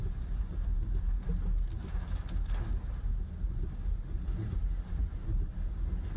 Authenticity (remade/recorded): recorded